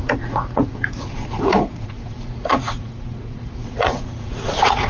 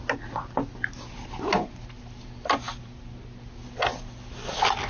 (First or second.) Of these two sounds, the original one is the second